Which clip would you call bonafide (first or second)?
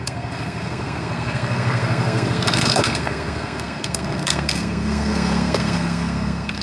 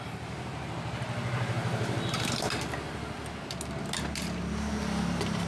second